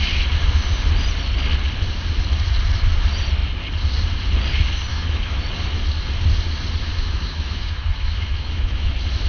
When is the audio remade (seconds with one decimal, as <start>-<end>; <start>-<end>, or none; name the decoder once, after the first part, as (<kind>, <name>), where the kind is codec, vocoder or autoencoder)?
4.9-5.4 (autoencoder, DAC-VAE); 6.9-8.9